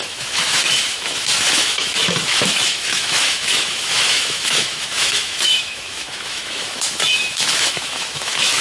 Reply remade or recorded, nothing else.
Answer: remade